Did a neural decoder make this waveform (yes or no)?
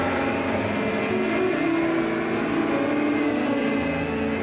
no